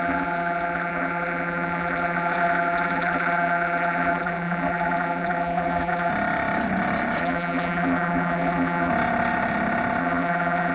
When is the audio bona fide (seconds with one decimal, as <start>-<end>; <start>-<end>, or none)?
6.1-7.2; 8.9-10.0

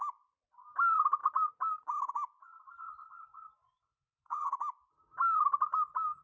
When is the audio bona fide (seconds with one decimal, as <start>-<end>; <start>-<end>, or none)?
0.0-2.8; 4.5-6.2

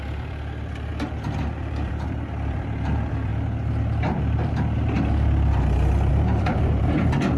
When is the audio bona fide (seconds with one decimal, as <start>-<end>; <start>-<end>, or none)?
0.9-1.6; 3.3-6.1

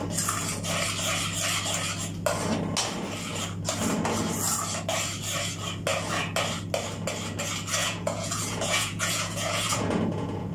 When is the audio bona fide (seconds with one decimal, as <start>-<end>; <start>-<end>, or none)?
0.0-7.8

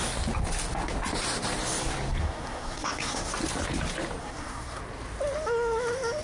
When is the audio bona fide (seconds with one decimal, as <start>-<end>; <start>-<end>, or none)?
0.0-2.2; 3.3-4.2; 4.8-6.2

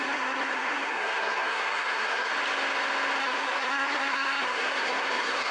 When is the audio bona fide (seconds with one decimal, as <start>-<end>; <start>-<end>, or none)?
2.3-3.2

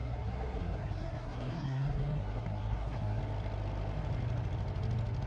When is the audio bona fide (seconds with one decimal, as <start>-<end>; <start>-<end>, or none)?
3.2-5.3

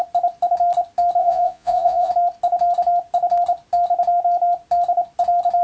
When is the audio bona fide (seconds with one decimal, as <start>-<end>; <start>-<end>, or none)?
0.0-1.2; 2.1-5.6